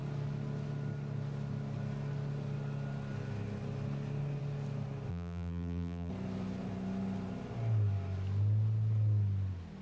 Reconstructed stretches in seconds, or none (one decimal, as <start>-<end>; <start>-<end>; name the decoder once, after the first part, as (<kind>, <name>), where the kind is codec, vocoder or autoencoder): 5.1-6.1 (vocoder, BigVGAN v2)